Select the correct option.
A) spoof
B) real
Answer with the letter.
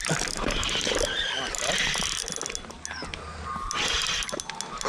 B